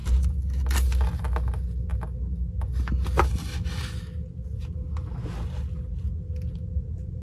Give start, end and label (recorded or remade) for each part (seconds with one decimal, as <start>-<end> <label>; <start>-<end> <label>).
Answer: 0.0-7.2 recorded

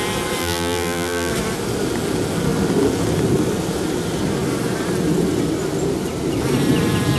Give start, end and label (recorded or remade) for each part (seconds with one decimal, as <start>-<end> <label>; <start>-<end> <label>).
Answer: 0.0-0.4 recorded; 0.4-1.3 remade; 1.3-7.2 recorded

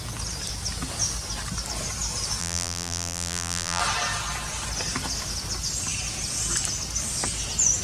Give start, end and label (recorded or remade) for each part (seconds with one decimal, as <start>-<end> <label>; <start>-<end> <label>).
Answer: 0.0-2.4 recorded; 2.4-3.8 remade; 3.8-7.8 recorded

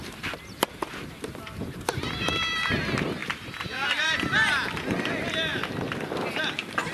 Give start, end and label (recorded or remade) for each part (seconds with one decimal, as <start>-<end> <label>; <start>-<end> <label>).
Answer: 0.0-0.8 recorded; 0.8-2.3 remade; 2.3-3.2 recorded; 3.2-4.5 remade; 4.5-5.5 recorded; 5.5-6.4 remade; 6.4-6.9 recorded

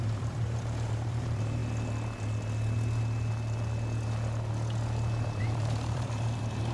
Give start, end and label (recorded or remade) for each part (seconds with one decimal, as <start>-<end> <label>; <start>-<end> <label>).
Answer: 0.0-1.6 remade; 1.6-5.4 recorded; 5.4-6.7 remade